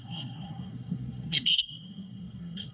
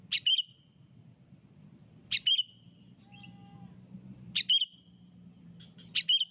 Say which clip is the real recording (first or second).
second